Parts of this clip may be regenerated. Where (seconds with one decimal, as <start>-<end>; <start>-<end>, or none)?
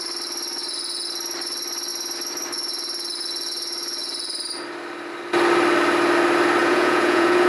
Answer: 6.6-7.5